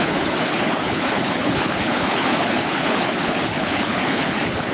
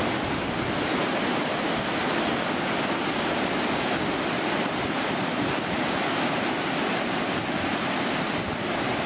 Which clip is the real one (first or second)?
second